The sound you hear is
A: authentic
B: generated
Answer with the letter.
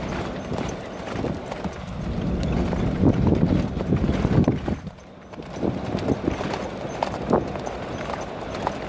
A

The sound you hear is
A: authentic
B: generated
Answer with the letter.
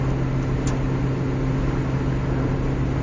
A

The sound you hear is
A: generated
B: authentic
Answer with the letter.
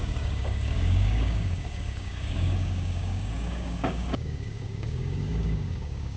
A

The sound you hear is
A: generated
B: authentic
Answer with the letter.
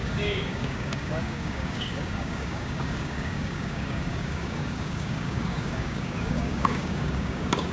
A